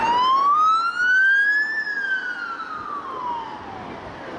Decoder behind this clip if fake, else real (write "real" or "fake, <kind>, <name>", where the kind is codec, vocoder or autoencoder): real